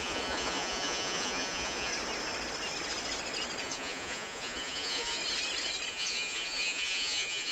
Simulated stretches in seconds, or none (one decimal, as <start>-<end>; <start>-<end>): 0.0-1.9; 3.6-5.2; 5.9-7.5